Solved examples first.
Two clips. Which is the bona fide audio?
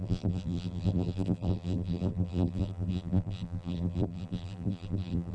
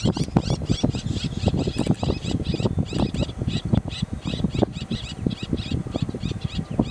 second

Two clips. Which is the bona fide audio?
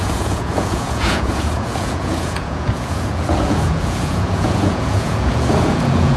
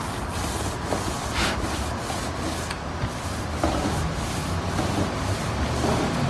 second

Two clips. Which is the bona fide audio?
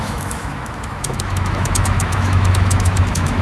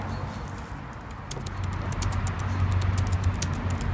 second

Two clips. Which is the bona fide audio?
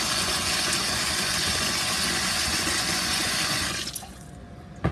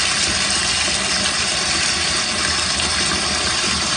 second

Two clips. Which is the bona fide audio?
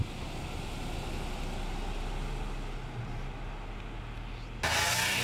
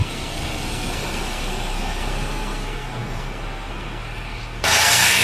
first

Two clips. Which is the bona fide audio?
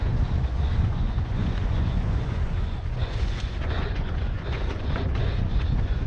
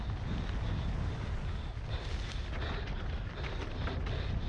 second